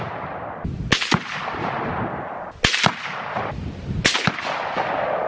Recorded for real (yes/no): yes